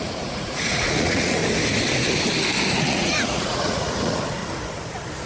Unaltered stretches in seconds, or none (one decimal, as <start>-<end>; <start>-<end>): 1.4-2.8; 4.4-5.3